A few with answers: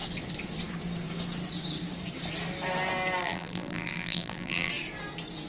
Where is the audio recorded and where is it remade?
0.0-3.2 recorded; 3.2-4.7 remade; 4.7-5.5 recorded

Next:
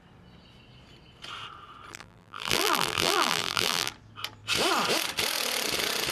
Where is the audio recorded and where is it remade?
0.0-1.9 recorded; 1.9-3.9 remade; 3.9-6.1 recorded

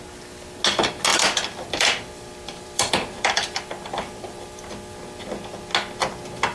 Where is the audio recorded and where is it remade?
0.0-1.1 recorded; 1.1-4.7 remade; 4.7-6.5 recorded